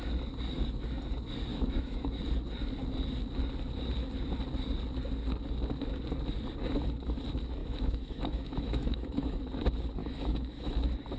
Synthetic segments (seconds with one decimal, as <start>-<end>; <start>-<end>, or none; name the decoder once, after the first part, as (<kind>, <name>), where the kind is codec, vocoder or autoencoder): 1.5-2.2 (autoencoder, DAC-VAE); 7.6-9.4; 10.0-10.7